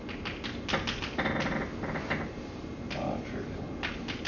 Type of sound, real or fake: real